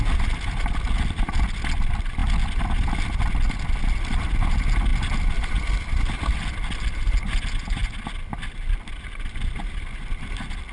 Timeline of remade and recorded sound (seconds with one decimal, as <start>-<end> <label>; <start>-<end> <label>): 0.0-10.7 recorded